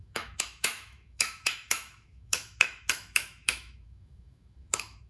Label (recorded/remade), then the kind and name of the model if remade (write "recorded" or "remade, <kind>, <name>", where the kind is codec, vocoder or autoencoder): remade, autoencoder, DAC-VAE